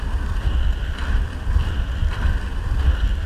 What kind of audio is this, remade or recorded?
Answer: remade